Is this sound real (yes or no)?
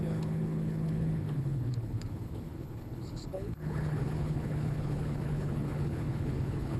no